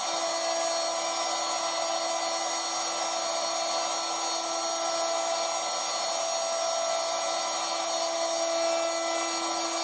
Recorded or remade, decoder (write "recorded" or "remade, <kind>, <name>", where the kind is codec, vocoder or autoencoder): recorded